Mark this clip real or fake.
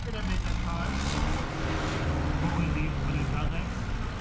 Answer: real